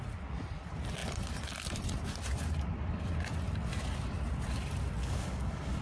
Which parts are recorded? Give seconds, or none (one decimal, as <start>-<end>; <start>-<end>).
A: 0.0-5.0